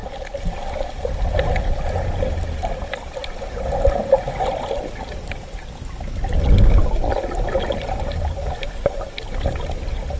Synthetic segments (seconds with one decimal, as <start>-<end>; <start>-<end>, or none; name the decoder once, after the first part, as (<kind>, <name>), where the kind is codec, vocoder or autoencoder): none